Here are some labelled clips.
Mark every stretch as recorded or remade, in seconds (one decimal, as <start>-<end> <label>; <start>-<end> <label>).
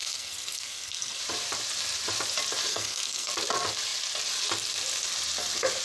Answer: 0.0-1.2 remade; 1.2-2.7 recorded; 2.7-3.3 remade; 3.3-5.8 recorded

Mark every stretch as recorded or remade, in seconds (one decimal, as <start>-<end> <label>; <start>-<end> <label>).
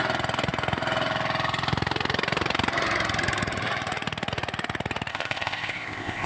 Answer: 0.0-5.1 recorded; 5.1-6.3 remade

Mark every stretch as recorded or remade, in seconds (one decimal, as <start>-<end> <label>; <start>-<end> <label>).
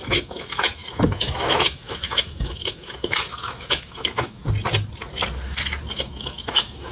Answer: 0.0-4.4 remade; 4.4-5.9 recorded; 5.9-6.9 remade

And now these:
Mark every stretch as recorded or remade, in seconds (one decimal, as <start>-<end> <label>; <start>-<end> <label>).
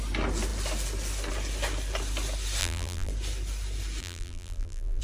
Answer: 0.0-2.6 recorded; 2.6-3.1 remade; 3.1-4.0 recorded; 4.0-5.0 remade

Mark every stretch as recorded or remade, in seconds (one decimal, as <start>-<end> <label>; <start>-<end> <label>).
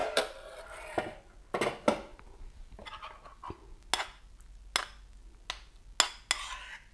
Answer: 0.0-0.6 remade; 0.6-6.9 recorded